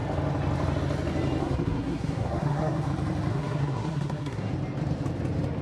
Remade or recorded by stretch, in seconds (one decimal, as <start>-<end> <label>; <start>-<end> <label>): 0.0-1.4 recorded; 1.4-2.9 remade; 2.9-3.3 recorded; 3.3-4.5 remade; 4.5-5.6 recorded